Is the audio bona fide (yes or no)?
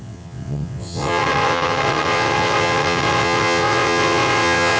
no